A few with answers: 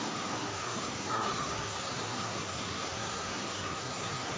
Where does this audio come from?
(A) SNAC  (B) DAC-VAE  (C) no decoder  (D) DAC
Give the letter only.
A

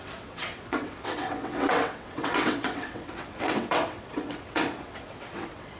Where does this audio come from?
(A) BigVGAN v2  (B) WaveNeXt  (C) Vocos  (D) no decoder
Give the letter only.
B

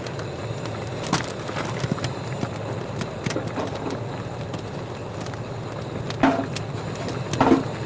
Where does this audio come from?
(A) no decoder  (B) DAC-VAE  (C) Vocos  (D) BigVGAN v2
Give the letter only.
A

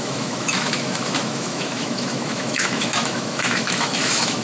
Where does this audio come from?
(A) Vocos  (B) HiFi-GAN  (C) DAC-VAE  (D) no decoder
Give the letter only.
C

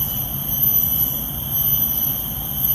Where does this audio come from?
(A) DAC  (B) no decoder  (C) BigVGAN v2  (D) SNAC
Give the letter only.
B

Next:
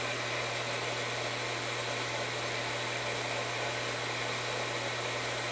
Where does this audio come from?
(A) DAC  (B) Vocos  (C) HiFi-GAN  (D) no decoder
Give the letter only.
D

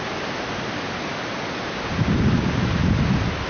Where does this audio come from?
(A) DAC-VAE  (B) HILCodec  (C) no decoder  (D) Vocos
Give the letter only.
C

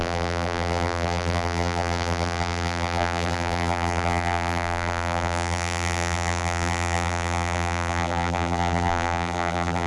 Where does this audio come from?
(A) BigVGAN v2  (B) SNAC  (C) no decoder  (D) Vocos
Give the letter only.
A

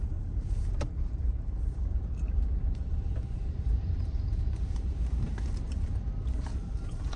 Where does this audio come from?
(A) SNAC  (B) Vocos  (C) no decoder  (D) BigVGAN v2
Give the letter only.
D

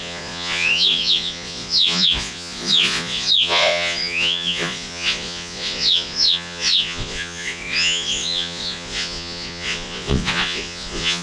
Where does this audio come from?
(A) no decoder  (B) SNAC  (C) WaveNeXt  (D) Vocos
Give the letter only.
D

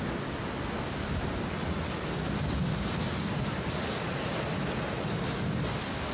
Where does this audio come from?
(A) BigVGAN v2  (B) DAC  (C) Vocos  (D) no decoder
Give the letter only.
D